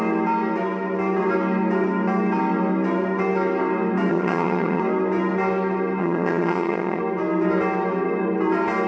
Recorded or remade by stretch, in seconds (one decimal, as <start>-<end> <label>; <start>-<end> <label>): 0.0-4.1 recorded; 4.1-4.8 remade; 4.8-6.0 recorded; 6.0-7.0 remade; 7.0-8.9 recorded